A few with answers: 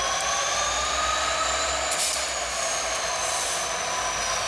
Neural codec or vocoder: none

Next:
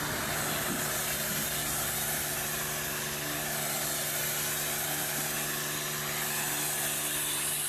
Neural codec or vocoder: none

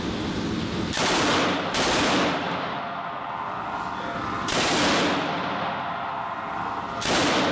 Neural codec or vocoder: none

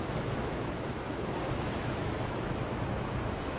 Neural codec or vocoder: autoencoder, DAC-VAE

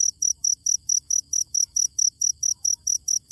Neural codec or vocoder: autoencoder, DAC-VAE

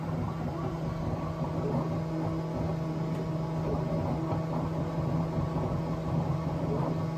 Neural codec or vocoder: none